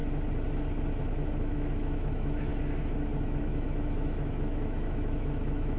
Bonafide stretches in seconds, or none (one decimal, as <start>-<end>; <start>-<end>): 0.0-1.0; 2.5-3.4